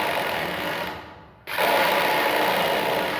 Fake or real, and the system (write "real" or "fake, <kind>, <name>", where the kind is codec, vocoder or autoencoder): real